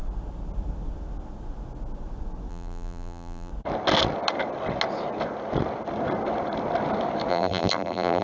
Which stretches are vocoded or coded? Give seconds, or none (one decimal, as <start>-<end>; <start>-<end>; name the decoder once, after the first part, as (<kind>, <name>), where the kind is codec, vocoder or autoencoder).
2.5-3.5 (vocoder, BigVGAN v2); 7.3-8.2